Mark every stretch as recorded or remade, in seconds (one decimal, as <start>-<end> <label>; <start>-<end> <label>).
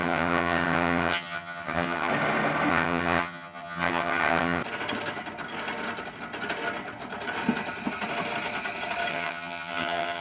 0.0-2.1 remade; 2.1-2.7 recorded; 2.7-4.6 remade; 4.6-9.1 recorded; 9.1-10.2 remade